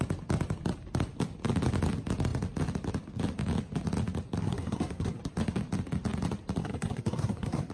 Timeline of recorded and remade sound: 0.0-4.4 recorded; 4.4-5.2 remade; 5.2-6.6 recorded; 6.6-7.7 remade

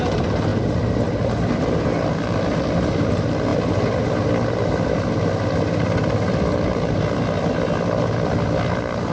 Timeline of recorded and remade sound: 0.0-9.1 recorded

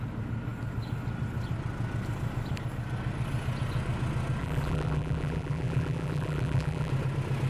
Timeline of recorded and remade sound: 0.0-4.4 recorded; 4.4-6.9 remade; 6.9-7.5 recorded

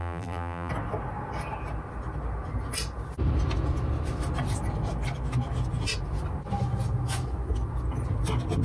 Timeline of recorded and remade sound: 0.0-0.7 remade; 0.7-8.6 recorded